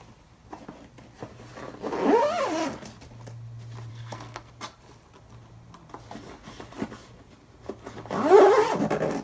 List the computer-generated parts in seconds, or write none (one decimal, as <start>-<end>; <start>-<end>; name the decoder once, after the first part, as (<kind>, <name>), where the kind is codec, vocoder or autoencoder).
3.9-4.5 (codec, SNAC)